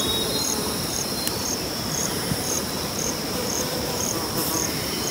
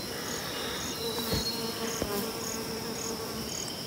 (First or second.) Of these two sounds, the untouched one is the second